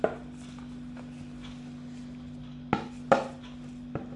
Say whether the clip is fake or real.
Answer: real